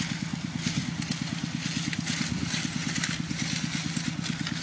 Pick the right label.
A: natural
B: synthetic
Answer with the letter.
A